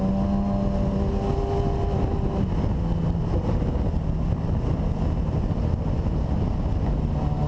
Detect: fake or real real